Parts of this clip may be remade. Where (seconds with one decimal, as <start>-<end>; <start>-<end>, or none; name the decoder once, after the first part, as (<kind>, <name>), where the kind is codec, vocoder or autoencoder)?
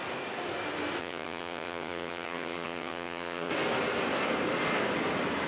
1.0-3.5 (vocoder, HiFi-GAN)